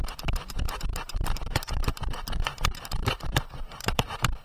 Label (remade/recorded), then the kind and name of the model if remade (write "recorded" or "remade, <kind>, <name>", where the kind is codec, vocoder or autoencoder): remade, vocoder, BigVGAN v2